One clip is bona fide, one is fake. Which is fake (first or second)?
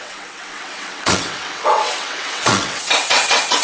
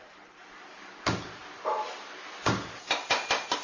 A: first